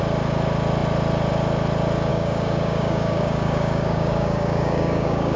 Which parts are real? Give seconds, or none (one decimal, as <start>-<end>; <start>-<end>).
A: 0.0-2.1